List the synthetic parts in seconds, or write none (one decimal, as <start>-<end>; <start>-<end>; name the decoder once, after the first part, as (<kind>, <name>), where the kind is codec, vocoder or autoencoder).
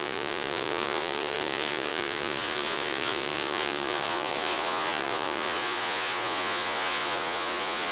0.0-7.9 (vocoder, Vocos)